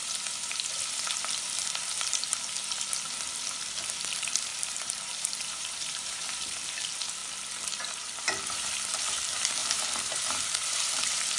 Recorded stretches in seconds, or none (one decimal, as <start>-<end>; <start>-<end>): 0.0-4.5; 6.7-9.6; 11.0-11.4